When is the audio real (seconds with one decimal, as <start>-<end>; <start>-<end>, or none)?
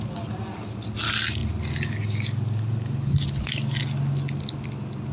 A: 0.0-5.1